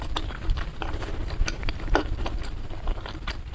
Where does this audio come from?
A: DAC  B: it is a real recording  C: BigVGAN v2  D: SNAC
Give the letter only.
C